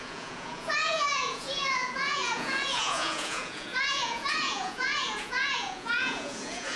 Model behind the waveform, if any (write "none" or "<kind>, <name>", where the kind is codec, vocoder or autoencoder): vocoder, Vocos